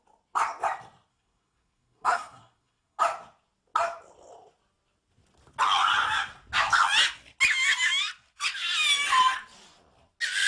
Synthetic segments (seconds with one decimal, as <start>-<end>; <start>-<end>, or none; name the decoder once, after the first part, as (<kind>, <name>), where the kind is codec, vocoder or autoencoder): 1.1-3.0 (codec, SNAC)